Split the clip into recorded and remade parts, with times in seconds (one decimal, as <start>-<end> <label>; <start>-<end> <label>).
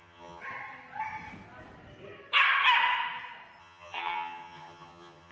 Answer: 0.0-0.4 remade; 0.4-3.6 recorded; 3.6-5.3 remade